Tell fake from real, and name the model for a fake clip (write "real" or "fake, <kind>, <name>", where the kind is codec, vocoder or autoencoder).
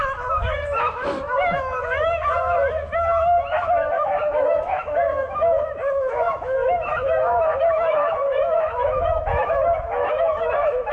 fake, autoencoder, DAC-VAE